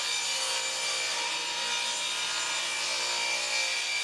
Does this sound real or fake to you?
real